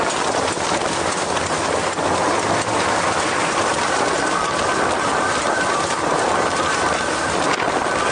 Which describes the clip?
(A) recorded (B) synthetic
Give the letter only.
A